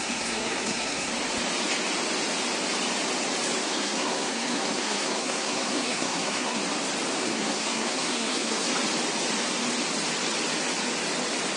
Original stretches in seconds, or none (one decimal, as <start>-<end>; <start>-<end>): 1.1-3.7; 6.6-7.2; 8.7-11.6